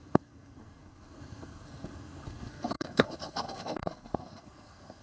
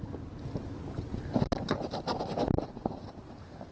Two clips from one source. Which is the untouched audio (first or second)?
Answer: second